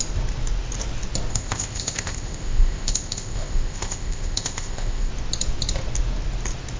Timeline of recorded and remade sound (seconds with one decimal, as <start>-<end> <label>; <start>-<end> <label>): 0.0-1.3 recorded; 1.3-5.1 remade; 5.1-6.8 recorded